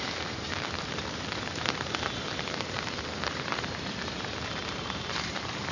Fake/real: fake